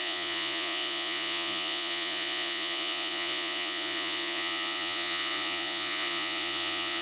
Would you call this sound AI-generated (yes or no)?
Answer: yes